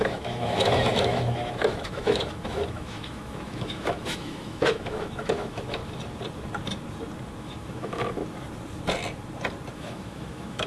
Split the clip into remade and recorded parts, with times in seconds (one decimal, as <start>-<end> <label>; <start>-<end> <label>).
0.0-5.8 remade; 5.8-7.4 recorded; 7.4-8.2 remade; 8.2-9.7 recorded; 9.7-10.7 remade